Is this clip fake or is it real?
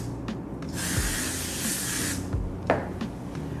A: real